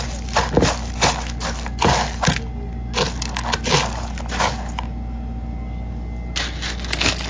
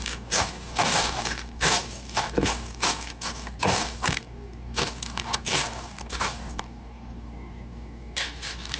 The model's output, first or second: second